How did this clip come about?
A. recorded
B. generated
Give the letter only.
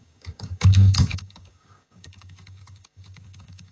B